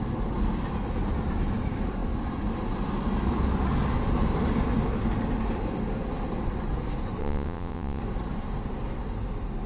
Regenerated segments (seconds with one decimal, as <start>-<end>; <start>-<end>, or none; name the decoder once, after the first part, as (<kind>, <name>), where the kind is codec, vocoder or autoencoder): 7.2-8.0 (vocoder, WaveNeXt)